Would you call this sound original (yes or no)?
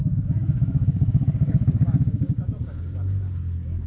no